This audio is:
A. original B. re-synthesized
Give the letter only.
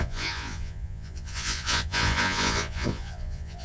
B